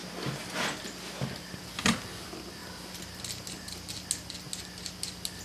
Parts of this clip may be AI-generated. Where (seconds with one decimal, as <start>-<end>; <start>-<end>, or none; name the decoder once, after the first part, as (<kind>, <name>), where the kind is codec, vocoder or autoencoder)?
none

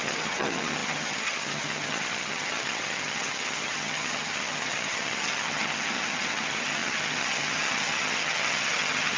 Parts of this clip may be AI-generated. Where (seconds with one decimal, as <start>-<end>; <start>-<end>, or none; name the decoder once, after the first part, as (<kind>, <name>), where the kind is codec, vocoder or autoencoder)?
0.0-9.2 (vocoder, HiFi-GAN)

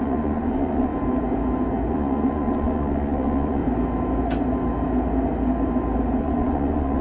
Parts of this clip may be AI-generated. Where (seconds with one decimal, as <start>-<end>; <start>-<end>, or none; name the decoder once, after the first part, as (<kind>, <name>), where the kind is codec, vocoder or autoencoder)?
0.0-0.9 (vocoder, Vocos); 1.9-3.6; 6.2-7.0

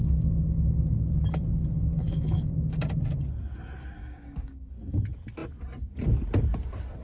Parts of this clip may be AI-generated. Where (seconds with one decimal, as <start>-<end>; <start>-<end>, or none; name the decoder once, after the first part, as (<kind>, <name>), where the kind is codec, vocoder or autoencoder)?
0.0-1.0 (codec, DAC); 1.9-2.8; 4.0-4.7